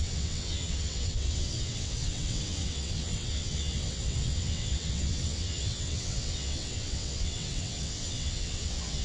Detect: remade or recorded remade